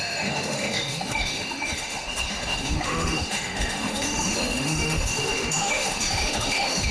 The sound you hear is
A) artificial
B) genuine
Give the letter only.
A